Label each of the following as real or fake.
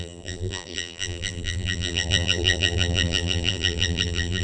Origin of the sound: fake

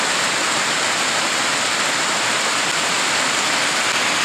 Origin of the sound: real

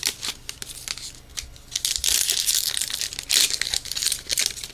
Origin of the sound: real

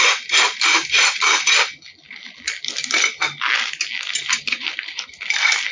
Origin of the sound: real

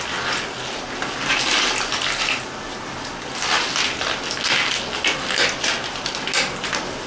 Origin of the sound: real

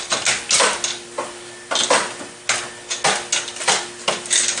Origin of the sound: real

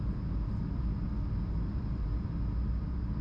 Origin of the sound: real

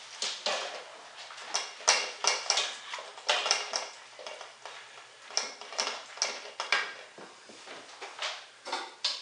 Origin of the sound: real